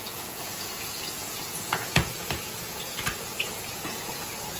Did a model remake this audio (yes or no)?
yes